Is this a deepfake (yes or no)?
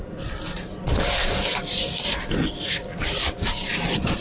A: no